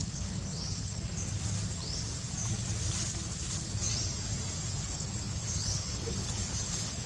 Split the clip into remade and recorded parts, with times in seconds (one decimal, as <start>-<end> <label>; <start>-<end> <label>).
0.0-0.9 remade; 0.9-4.7 recorded; 4.7-7.1 remade